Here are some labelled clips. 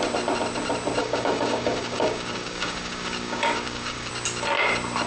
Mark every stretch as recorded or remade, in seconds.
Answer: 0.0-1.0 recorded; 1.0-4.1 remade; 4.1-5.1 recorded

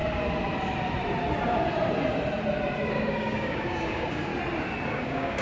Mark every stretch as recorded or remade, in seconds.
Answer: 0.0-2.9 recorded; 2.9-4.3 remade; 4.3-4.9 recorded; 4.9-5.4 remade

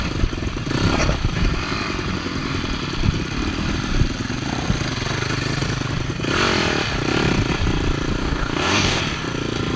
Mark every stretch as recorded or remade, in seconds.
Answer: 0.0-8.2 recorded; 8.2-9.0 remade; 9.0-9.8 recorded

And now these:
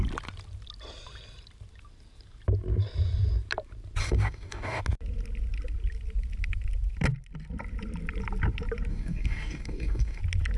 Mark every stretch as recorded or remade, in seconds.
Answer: 0.0-4.0 recorded; 4.0-4.8 remade; 4.8-8.9 recorded; 8.9-10.2 remade; 10.2-10.6 recorded

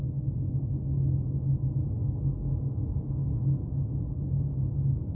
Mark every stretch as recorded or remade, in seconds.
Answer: 0.0-2.0 recorded; 2.0-3.0 remade; 3.0-5.1 recorded

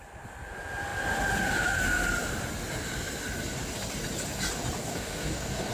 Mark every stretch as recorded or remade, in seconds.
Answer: 0.0-4.8 recorded; 4.8-5.7 remade